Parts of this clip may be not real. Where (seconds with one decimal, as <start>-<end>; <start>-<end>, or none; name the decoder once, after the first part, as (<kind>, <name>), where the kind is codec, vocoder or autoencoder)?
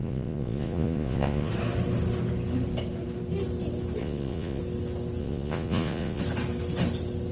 0.0-1.5 (vocoder, Vocos); 4.0-4.6; 5.2-6.2